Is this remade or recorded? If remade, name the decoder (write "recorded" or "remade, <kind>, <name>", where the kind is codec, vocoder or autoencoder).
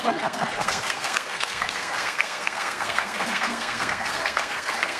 remade, codec, SNAC